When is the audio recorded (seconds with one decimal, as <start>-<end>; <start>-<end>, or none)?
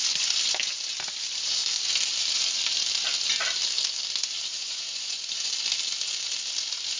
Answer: 0.0-4.5; 5.5-7.0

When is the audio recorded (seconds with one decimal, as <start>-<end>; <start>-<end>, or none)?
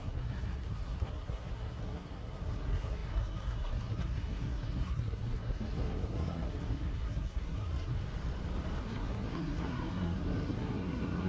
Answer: 7.9-8.8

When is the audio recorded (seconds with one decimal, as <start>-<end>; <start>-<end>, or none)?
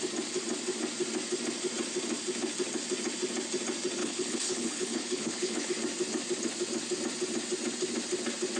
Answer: 0.0-4.0; 5.7-8.6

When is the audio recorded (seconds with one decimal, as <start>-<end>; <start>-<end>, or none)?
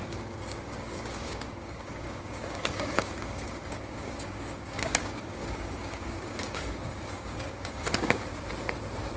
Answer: 8.3-9.2